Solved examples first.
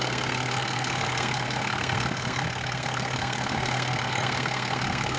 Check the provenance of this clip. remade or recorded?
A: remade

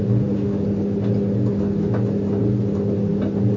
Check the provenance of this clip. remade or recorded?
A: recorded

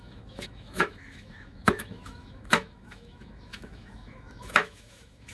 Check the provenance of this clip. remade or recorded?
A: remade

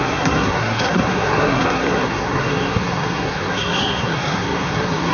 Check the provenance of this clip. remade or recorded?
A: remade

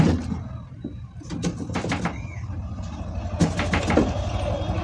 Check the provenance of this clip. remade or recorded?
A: recorded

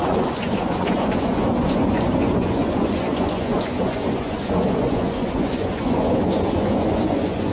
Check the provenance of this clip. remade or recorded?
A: remade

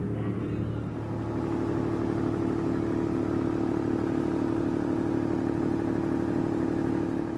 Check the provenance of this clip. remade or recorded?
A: recorded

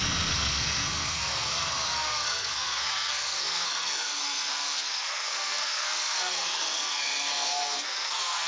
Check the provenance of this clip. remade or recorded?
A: remade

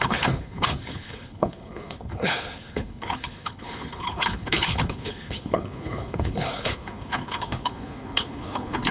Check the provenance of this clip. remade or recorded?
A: remade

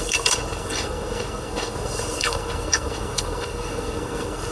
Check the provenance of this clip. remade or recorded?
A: remade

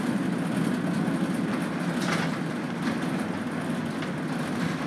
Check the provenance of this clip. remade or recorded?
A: recorded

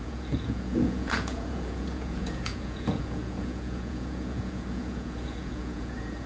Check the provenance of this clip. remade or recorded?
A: remade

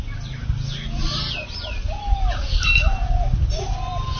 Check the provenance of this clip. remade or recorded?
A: recorded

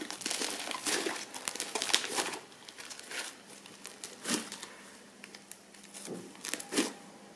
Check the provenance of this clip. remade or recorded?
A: recorded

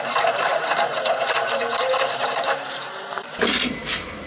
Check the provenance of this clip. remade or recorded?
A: remade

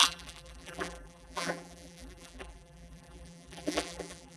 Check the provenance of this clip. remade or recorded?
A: remade